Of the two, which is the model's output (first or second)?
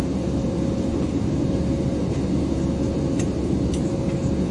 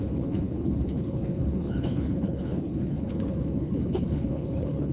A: second